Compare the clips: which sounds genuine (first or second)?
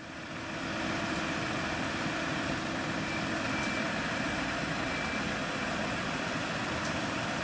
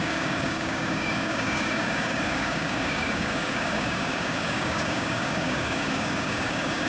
first